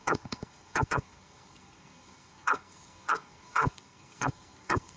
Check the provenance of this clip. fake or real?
fake